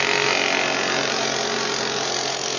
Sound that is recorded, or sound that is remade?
recorded